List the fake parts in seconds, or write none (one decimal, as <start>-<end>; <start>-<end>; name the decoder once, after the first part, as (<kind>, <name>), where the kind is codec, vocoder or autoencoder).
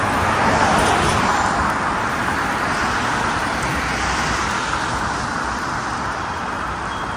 3.1-5.8 (vocoder, BigVGAN v2)